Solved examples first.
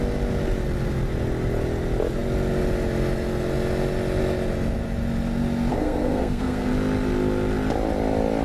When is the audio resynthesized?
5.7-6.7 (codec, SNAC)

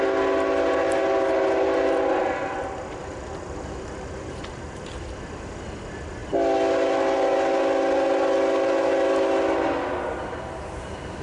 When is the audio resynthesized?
2.2-5.1 (vocoder, BigVGAN v2)

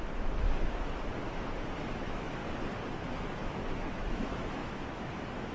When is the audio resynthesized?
0.0-2.4 (autoencoder, DAC-VAE); 3.2-5.5

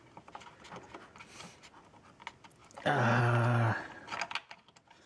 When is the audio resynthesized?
none

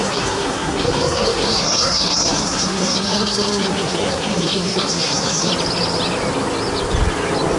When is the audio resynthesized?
0.0-5.5 (codec, SNAC)

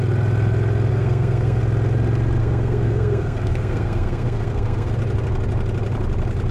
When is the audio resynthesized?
0.9-1.6 (codec, SNAC); 2.4-4.9

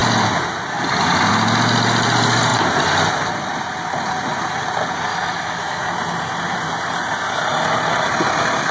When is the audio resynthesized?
5.1-5.8 (autoencoder, DAC-VAE)